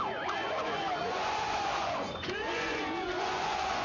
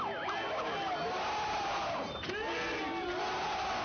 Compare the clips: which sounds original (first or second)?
second